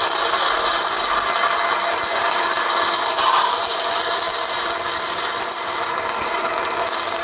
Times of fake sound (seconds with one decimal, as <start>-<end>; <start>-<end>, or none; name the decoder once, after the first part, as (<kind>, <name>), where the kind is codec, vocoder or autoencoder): none